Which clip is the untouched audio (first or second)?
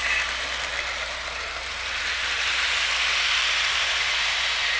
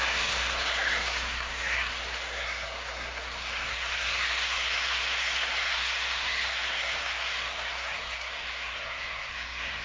first